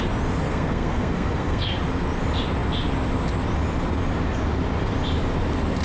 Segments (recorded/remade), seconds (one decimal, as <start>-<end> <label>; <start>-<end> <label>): 0.0-0.5 recorded; 0.5-1.8 remade; 1.8-5.8 recorded